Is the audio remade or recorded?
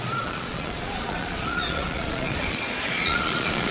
remade